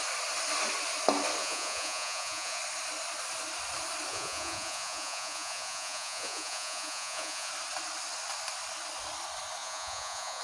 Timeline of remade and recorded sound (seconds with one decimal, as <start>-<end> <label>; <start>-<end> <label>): 0.0-1.4 recorded; 1.4-2.6 remade; 2.6-4.1 recorded; 4.1-7.5 remade; 7.5-9.6 recorded; 9.6-10.4 remade